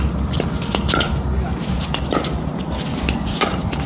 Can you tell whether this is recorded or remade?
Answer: recorded